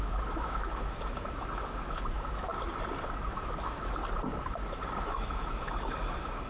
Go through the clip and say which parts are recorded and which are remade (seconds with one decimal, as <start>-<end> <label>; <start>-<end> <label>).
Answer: 0.0-2.5 remade; 2.5-3.3 recorded; 3.3-4.0 remade; 4.0-5.0 recorded; 5.0-6.5 remade